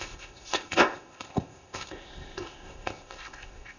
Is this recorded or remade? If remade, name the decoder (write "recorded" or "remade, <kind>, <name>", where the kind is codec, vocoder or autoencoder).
remade, codec, ZipCodec